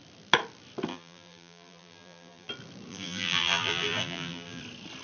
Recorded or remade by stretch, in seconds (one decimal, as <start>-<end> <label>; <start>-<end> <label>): 0.0-0.9 recorded; 0.9-2.5 remade; 2.5-2.9 recorded; 2.9-4.6 remade; 4.6-5.0 recorded

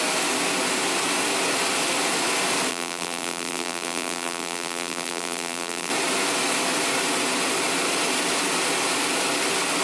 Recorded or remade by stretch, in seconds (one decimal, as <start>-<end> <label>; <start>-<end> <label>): 0.0-2.7 recorded; 2.7-5.9 remade; 5.9-9.8 recorded

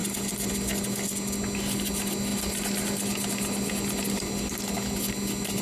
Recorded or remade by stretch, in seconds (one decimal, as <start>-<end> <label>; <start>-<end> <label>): 0.0-5.6 recorded

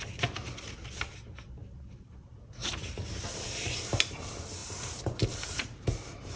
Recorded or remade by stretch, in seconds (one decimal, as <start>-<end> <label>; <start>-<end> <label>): 0.0-1.6 recorded; 1.6-2.1 remade; 2.1-2.6 recorded; 2.6-4.0 remade; 4.0-4.6 recorded; 4.6-6.4 remade

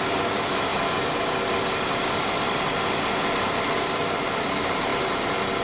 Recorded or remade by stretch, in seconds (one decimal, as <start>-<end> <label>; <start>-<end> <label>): 0.0-0.7 remade; 0.7-3.7 recorded; 3.7-4.9 remade; 4.9-5.6 recorded

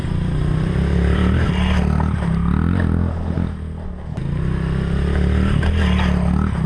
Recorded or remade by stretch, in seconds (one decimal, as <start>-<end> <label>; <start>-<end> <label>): 0.0-1.5 remade; 1.5-6.7 recorded

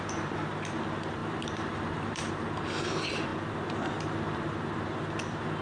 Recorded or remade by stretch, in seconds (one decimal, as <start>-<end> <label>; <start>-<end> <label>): 0.0-1.2 recorded; 1.2-2.3 remade; 2.3-5.6 recorded

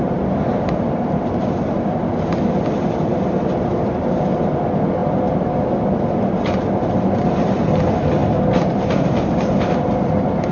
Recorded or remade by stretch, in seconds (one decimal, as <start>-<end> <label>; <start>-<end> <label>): 0.0-5.0 remade; 5.0-7.2 recorded; 7.2-10.5 remade